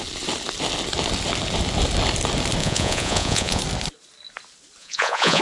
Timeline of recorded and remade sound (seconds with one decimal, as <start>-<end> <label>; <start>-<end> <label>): 0.0-2.6 recorded; 2.6-3.6 remade; 3.6-4.8 recorded; 4.8-5.4 remade